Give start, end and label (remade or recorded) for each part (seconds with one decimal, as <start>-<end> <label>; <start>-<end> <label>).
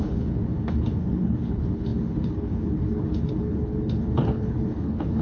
0.0-5.2 remade